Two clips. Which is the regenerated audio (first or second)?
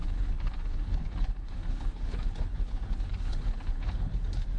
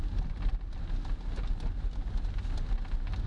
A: first